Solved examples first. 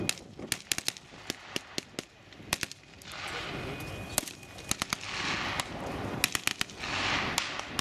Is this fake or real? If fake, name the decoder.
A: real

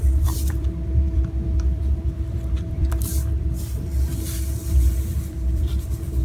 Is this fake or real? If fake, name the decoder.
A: fake, vocoder, BigVGAN v2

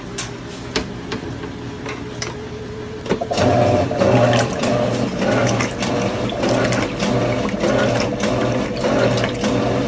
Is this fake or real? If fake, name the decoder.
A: real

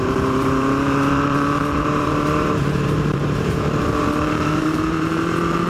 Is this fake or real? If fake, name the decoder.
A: fake, vocoder, BigVGAN v2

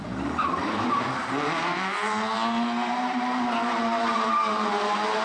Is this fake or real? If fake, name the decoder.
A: fake, vocoder, BigVGAN v2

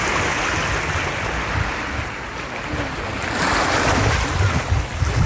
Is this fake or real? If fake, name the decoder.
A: real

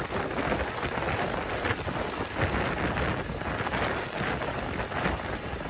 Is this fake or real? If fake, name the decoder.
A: real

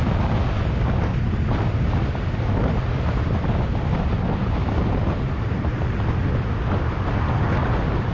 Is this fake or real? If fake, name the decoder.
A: real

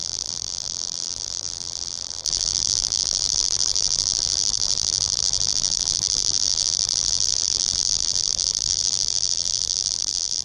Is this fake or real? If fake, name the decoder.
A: fake, vocoder, BigVGAN v2